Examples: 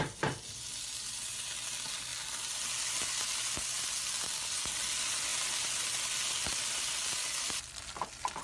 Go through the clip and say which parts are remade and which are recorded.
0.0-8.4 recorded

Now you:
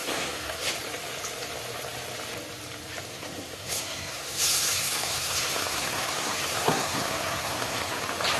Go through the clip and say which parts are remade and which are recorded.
0.0-0.7 remade; 0.7-3.1 recorded; 3.1-8.0 remade; 8.0-8.4 recorded

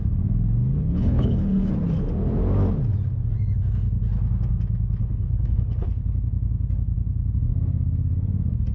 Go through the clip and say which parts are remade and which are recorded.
0.0-0.8 recorded; 0.8-1.7 remade; 1.7-5.0 recorded; 5.0-6.0 remade; 6.0-8.7 recorded